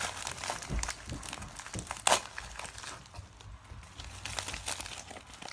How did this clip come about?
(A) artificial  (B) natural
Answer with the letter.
B